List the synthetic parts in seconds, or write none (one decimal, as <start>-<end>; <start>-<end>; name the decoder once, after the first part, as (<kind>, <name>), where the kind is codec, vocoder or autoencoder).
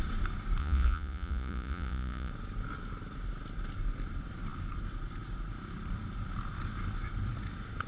0.6-2.3 (vocoder, Vocos)